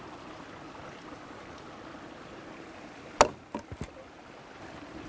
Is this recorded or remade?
recorded